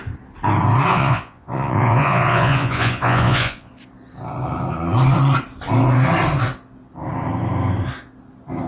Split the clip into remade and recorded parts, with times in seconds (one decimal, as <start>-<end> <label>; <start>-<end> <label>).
0.0-0.9 recorded; 0.9-3.7 remade; 3.7-8.7 recorded